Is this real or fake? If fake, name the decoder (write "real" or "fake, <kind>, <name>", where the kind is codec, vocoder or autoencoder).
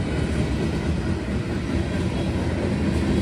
real